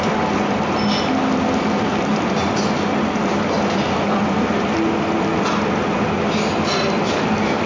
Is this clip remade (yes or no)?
no